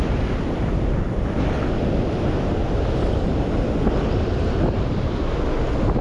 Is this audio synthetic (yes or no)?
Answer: no